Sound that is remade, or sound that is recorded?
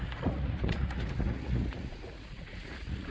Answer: remade